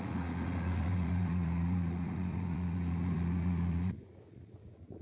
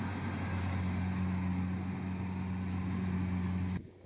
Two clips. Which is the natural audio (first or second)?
second